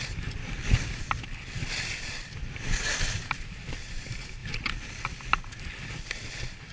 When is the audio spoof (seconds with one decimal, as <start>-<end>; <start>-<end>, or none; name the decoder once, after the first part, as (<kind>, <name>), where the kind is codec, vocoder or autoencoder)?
none